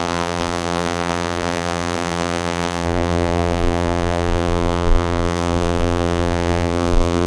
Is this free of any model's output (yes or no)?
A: no